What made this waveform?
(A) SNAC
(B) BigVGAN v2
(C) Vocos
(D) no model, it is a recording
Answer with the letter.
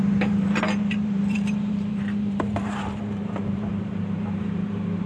B